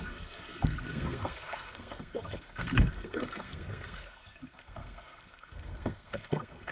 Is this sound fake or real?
fake